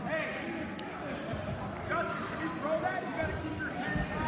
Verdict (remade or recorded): recorded